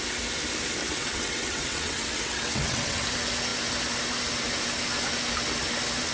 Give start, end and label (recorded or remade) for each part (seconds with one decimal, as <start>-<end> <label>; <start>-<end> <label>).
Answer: 0.0-0.8 recorded; 0.8-3.0 remade; 3.0-6.1 recorded